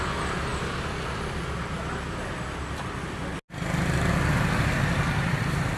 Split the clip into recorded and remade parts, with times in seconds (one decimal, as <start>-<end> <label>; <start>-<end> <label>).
0.0-5.8 recorded